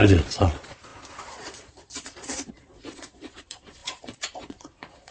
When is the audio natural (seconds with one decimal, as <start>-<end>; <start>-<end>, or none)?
none